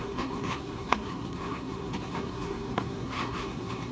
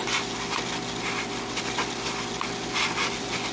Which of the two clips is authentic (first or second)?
second